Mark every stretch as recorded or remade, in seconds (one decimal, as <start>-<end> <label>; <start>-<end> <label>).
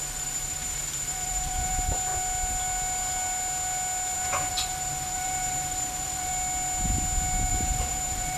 0.0-2.1 remade; 2.1-4.5 recorded; 4.5-6.3 remade; 6.3-7.5 recorded; 7.5-8.4 remade